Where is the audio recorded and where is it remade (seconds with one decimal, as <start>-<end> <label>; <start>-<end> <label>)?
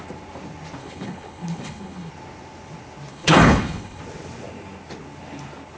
0.0-0.8 recorded; 0.8-2.1 remade; 2.1-3.1 recorded; 3.1-4.0 remade; 4.0-5.8 recorded